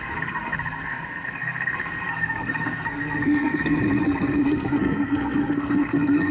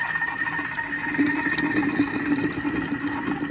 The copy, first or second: first